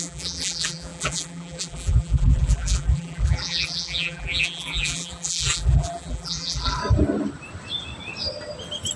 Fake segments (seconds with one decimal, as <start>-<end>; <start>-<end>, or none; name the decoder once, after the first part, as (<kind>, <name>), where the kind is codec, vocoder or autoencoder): 0.0-6.8 (vocoder, BigVGAN v2)